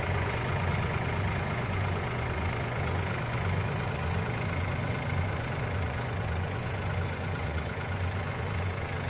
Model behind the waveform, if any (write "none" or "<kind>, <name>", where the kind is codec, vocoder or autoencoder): vocoder, Vocos